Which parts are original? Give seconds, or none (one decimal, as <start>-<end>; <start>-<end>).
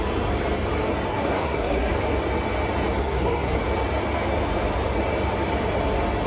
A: 0.0-1.1; 1.9-3.0; 3.6-6.3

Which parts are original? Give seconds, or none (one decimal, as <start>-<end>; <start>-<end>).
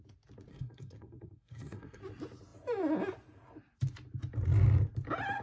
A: 0.0-0.5; 2.0-5.4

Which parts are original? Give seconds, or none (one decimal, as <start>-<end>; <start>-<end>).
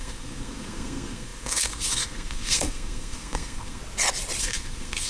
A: 3.8-4.4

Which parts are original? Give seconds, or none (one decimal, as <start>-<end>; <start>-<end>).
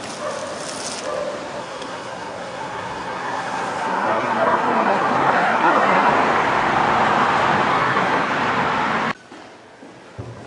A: 0.0-1.6; 6.1-7.7; 8.3-10.5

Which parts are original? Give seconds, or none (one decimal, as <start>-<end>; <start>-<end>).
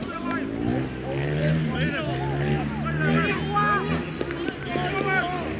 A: 0.0-5.6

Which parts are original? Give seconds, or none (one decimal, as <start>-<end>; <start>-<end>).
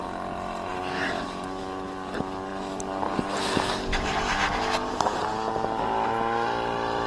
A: 0.0-7.1